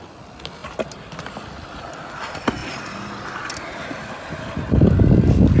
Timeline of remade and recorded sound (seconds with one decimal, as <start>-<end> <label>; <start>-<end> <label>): 0.0-5.6 recorded

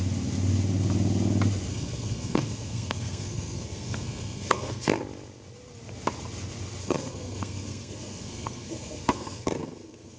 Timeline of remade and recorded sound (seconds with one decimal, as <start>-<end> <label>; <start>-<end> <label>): 0.0-1.7 recorded; 1.7-5.0 remade; 5.0-6.8 recorded; 6.8-10.2 remade

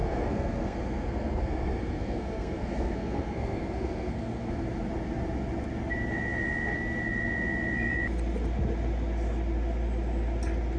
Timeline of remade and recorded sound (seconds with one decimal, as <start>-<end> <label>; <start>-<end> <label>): 0.0-4.5 remade; 4.5-10.8 recorded